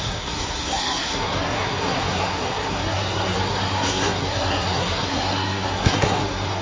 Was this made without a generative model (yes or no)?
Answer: no